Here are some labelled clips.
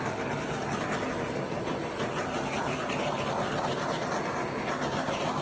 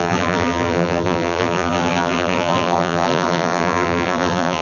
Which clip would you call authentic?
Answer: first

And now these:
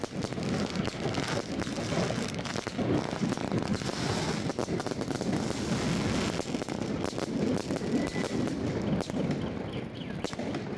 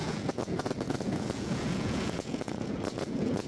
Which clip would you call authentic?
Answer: first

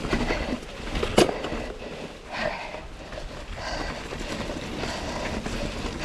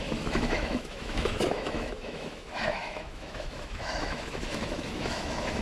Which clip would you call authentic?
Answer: first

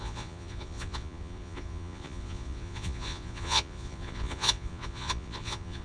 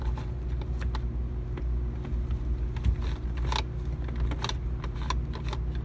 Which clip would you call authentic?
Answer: second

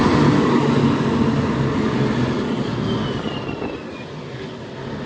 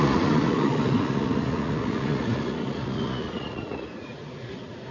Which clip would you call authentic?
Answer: first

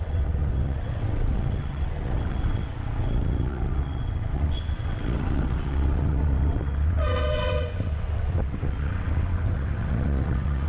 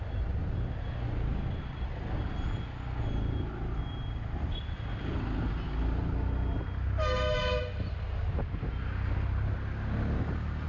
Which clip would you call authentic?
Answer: second